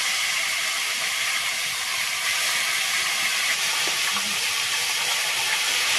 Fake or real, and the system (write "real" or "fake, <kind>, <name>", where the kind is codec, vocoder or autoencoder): fake, vocoder, BigVGAN v2